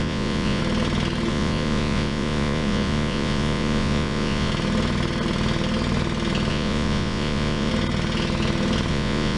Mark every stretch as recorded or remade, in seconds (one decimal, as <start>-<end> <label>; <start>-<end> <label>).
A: 0.0-0.6 remade; 0.6-1.3 recorded; 1.3-4.5 remade; 4.5-6.5 recorded; 6.5-7.7 remade; 7.7-8.9 recorded; 8.9-9.4 remade